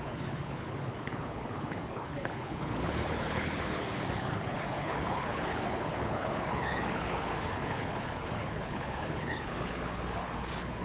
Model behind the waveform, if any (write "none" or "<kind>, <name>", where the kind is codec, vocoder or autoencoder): codec, HILCodec